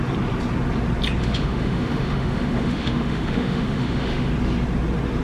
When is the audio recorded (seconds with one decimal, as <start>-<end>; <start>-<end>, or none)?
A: 0.0-1.2; 4.3-5.2